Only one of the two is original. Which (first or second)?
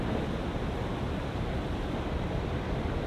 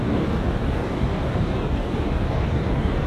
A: first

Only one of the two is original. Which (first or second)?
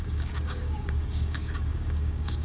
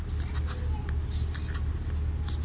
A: second